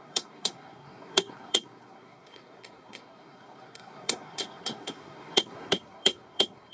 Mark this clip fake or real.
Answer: fake